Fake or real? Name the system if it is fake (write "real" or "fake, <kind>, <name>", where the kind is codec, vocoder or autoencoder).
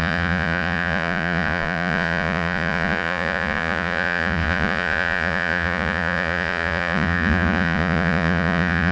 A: fake, vocoder, Vocos